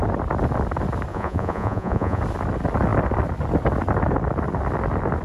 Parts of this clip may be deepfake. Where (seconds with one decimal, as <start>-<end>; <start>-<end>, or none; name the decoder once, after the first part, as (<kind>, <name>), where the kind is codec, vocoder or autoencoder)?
1.1-2.2 (vocoder, Vocos)